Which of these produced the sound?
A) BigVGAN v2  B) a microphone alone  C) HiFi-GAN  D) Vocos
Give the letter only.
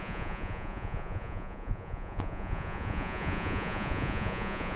D